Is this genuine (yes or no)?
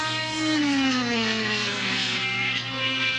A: no